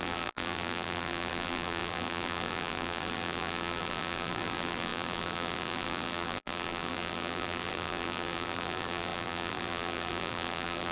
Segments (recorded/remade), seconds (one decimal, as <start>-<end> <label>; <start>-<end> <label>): 0.0-10.9 remade